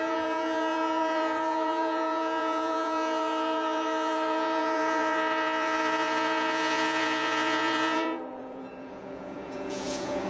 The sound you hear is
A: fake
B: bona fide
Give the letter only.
A